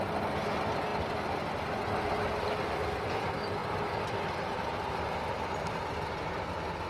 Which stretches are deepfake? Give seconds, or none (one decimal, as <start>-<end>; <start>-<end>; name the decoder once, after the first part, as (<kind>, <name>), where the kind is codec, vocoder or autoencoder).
none